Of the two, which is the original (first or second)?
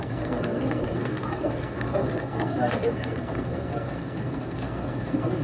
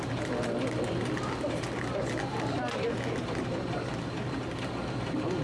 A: second